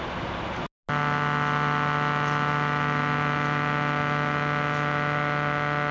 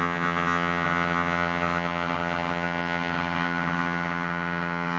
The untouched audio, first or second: first